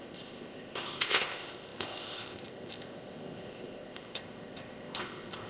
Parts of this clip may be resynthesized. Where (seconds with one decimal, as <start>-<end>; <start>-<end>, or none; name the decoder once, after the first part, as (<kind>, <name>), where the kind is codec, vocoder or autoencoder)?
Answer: 0.0-5.5 (codec, ZipCodec)